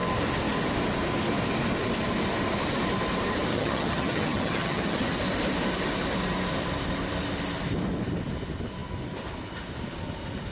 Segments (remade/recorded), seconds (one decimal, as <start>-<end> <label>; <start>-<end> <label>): 0.0-3.5 recorded; 3.5-5.0 remade; 5.0-10.5 recorded